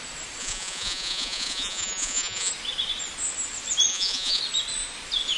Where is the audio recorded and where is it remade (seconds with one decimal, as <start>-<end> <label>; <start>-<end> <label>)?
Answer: 0.0-0.4 recorded; 0.4-2.5 remade; 2.5-3.9 recorded; 3.9-4.4 remade; 4.4-5.4 recorded